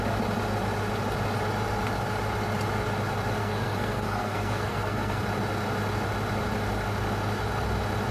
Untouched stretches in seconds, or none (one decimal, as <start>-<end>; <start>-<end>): 0.0-3.4; 5.2-8.1